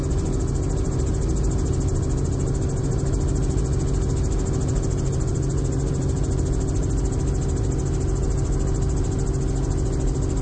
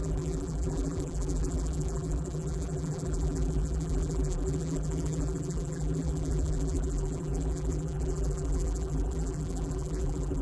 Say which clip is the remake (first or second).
second